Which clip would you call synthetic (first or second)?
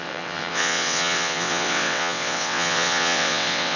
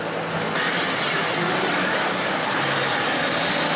first